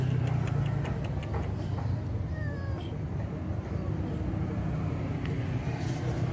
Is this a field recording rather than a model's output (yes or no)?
yes